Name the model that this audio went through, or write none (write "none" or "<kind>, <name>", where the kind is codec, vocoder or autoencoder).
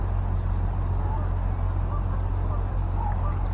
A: none